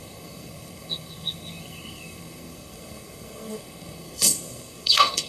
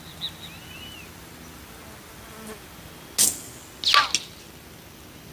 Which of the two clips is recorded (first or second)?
second